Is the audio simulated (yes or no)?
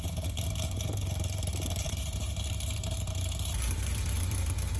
yes